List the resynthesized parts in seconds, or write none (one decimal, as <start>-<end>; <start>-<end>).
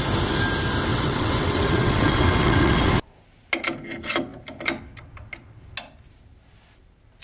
0.9-2.9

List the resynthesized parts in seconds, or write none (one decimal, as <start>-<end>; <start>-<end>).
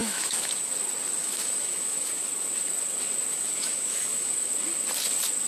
0.0-0.7; 1.2-2.2; 3.3-4.5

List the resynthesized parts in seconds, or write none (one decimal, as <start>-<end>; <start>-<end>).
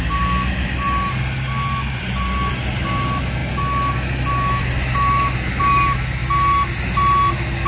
none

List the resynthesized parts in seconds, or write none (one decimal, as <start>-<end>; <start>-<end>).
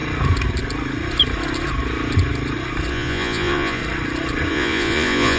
2.9-3.8; 4.5-5.4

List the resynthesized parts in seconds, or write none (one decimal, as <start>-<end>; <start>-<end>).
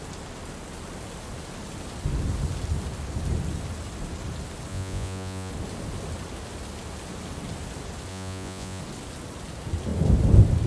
4.7-5.5; 8.1-8.8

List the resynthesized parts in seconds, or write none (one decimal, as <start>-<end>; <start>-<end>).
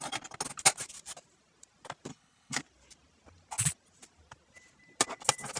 2.1-2.6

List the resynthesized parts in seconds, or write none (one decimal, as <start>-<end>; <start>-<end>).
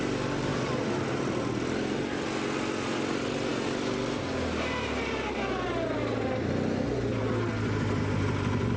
0.5-1.2